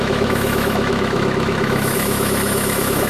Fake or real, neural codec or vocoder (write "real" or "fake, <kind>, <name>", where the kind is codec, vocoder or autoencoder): fake, autoencoder, DAC-VAE